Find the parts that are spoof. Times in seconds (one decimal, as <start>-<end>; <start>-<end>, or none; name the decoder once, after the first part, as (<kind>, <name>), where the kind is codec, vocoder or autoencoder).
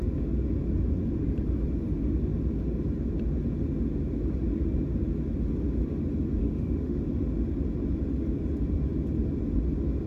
6.4-7.0 (autoencoder, DAC-VAE)